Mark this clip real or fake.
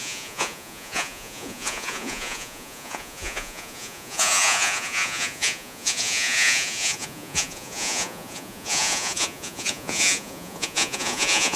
fake